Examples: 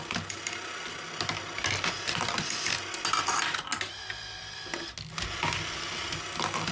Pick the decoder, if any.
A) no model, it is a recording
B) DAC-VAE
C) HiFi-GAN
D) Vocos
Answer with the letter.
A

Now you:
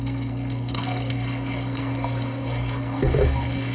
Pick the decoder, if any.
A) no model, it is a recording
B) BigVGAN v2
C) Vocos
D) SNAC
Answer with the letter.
D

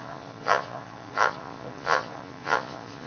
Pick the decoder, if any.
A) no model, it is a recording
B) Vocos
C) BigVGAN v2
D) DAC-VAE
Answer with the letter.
B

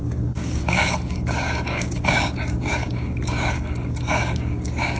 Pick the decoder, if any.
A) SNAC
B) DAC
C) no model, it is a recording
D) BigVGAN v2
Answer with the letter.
B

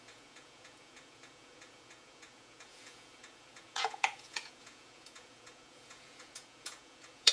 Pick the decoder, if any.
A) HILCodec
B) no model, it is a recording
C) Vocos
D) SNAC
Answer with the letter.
C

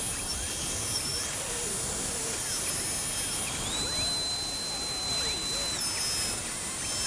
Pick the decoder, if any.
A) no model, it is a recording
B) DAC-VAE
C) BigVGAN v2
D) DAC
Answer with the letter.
A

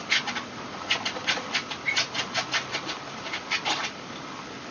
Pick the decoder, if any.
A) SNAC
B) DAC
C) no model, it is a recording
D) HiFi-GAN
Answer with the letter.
C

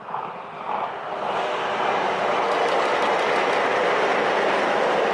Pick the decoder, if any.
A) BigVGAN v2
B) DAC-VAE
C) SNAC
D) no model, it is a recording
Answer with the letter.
D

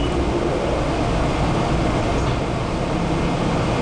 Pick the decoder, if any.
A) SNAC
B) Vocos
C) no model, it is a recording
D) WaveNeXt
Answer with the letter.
C